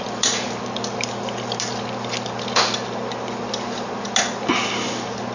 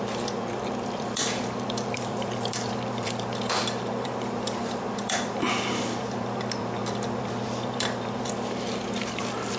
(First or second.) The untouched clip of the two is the first